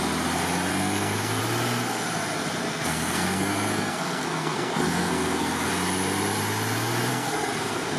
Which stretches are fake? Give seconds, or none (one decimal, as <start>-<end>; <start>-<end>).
0.7-1.4; 2.7-5.7; 7.1-8.0